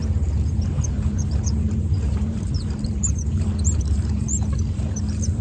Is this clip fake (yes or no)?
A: yes